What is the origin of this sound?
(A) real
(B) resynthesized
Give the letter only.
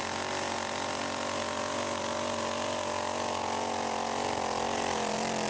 A